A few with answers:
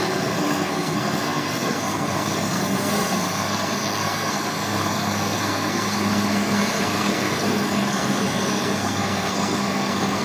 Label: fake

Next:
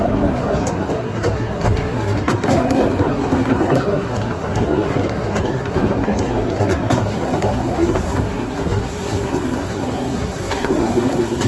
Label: fake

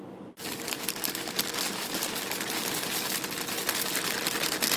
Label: real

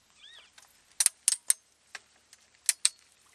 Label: real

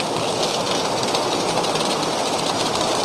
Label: real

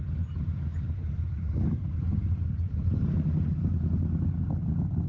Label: real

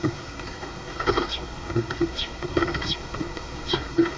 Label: fake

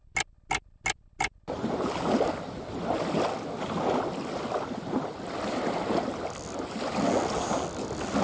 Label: real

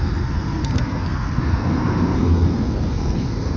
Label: fake